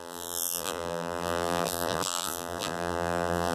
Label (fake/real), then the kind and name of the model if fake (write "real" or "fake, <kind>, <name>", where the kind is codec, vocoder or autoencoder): fake, vocoder, BigVGAN v2